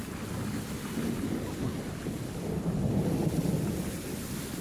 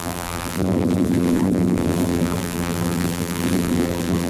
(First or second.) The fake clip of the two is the second